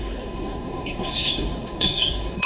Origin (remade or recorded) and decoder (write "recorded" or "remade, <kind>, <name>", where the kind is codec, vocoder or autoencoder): remade, codec, SNAC